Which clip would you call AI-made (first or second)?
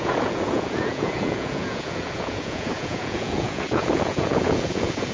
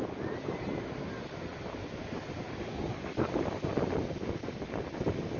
first